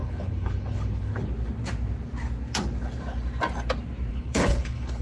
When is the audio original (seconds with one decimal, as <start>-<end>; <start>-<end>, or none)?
1.1-4.1